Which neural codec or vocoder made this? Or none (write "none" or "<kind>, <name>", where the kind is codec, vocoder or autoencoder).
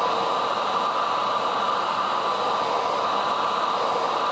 none